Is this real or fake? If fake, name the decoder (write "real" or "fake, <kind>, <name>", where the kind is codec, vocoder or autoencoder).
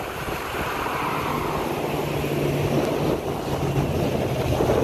real